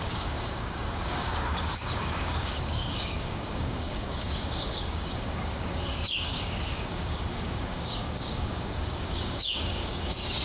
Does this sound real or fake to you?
fake